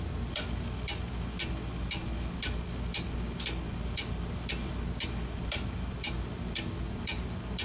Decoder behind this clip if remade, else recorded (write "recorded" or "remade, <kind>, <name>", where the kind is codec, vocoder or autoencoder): recorded